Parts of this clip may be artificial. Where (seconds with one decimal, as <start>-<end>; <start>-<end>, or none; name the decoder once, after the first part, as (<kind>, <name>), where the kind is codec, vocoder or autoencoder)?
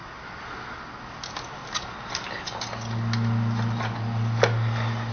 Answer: none